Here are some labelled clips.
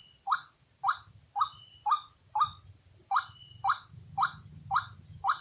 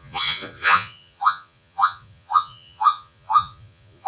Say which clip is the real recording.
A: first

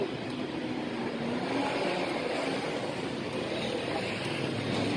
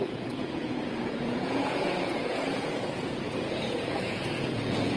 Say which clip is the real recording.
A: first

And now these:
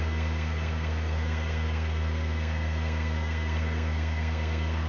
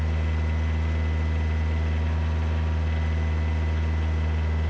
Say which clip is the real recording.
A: second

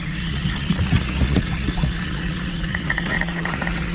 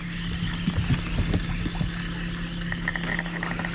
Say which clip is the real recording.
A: second